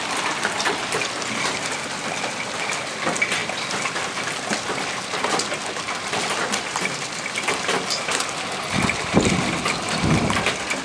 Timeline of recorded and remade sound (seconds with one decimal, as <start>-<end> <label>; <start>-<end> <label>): 0.0-3.4 recorded; 3.4-4.2 remade; 4.2-10.8 recorded